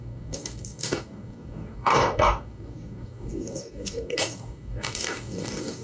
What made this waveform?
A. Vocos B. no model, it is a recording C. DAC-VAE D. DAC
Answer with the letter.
D